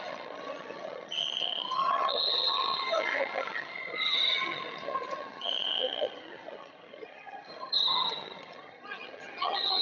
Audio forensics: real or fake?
fake